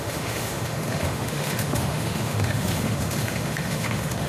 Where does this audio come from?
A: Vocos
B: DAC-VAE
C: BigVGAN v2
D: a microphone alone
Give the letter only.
B